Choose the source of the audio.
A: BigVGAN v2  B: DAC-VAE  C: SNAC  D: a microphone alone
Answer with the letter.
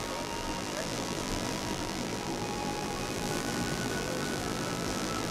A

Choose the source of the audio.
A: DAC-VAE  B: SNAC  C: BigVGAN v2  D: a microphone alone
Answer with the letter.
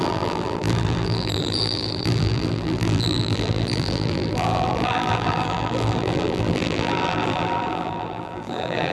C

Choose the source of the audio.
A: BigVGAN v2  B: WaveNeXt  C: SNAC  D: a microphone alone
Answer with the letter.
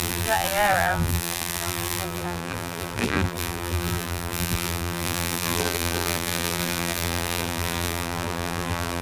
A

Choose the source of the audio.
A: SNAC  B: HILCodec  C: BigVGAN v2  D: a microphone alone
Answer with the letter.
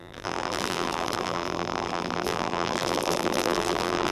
C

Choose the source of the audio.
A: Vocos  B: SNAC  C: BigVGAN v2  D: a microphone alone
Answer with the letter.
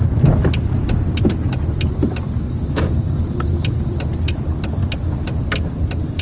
D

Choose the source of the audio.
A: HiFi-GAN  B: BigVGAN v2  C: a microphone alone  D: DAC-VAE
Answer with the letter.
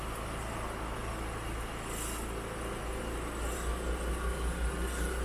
C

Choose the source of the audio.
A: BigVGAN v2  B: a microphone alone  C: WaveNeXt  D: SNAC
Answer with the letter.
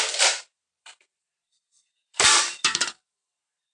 A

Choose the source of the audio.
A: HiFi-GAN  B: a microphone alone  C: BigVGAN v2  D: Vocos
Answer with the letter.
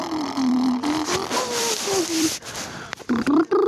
C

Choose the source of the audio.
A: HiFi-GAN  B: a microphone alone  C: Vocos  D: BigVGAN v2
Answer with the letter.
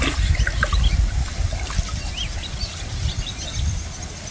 B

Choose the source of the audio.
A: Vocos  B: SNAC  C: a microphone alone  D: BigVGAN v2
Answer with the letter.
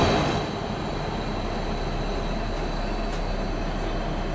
C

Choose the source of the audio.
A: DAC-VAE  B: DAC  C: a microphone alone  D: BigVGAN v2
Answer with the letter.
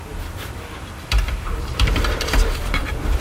D